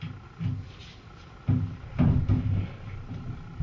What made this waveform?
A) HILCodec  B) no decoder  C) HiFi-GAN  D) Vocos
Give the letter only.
B